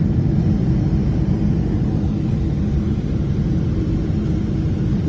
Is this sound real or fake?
real